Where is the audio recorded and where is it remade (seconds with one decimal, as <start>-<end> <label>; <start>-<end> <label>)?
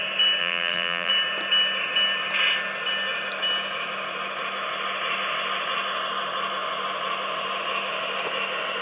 0.0-0.4 recorded; 0.4-1.1 remade; 1.1-8.8 recorded